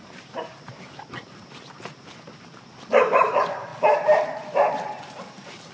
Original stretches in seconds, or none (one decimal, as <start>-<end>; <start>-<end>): 3.7-5.0